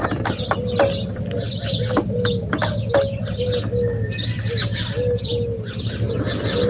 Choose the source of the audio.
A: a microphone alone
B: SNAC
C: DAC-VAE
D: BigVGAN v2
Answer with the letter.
A